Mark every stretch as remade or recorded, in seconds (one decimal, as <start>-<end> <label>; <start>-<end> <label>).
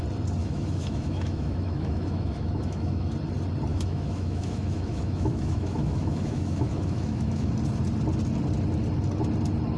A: 0.0-0.4 recorded; 0.4-3.1 remade; 3.1-3.7 recorded; 3.7-7.5 remade; 7.5-9.8 recorded